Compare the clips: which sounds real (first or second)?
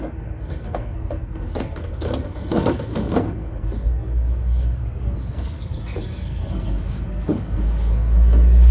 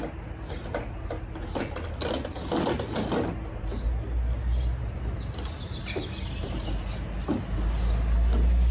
second